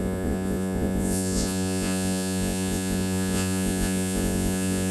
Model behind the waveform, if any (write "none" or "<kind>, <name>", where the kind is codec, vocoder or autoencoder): vocoder, Vocos